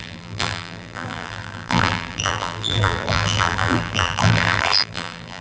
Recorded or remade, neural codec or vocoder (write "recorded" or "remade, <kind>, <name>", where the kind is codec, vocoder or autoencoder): remade, vocoder, BigVGAN v2